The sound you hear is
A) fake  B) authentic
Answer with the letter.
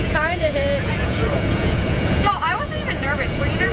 A